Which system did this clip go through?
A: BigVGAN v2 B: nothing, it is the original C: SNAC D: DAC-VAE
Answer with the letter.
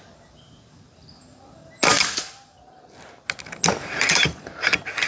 B